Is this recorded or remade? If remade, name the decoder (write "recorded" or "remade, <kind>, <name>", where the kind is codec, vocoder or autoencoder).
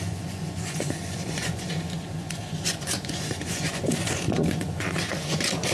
remade, vocoder, Vocos